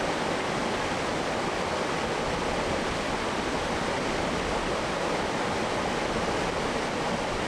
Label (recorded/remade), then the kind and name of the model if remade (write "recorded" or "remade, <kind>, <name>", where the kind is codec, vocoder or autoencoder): recorded